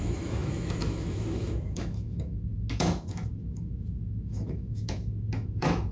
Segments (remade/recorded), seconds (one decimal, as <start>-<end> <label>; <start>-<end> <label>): 0.0-5.9 remade